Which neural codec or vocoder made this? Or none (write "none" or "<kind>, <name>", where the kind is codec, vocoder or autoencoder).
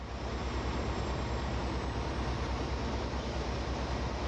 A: none